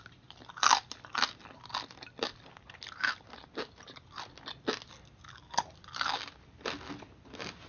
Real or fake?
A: real